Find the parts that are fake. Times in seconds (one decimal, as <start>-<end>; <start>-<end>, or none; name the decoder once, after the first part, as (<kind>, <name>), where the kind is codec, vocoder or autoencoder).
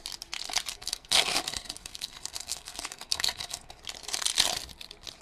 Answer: 0.7-3.8 (codec, SNAC)